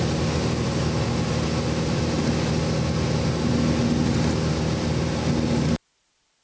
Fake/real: real